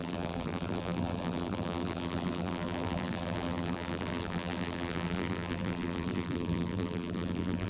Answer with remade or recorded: remade